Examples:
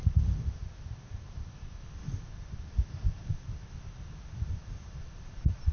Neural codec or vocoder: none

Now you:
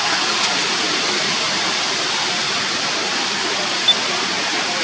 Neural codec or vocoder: none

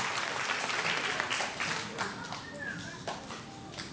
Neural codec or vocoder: none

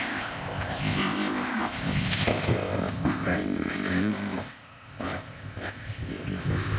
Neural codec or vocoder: codec, ZipCodec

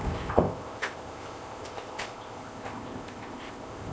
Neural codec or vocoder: codec, ZipCodec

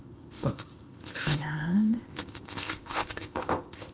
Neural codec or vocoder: codec, ZipCodec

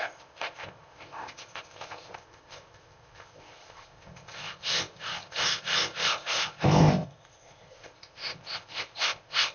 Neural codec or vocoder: codec, ZipCodec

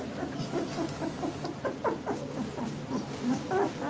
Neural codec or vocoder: none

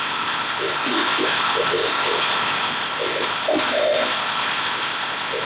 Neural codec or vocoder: codec, ZipCodec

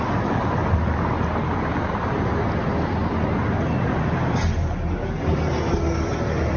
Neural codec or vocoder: none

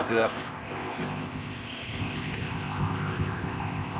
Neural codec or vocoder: codec, ZipCodec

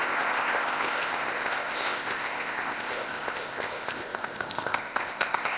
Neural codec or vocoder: codec, ZipCodec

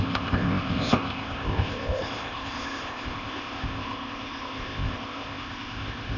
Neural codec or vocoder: codec, ZipCodec